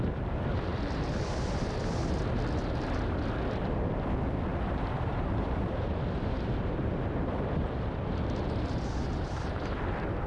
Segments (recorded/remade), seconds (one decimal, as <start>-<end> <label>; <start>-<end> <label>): 0.0-4.5 recorded; 4.5-7.5 remade; 7.5-10.3 recorded